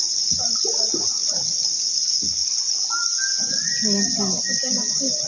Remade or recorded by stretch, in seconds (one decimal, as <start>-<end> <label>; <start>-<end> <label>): 0.0-5.3 recorded